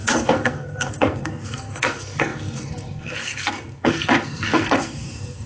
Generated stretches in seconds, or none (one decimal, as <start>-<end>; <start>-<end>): 0.0-5.5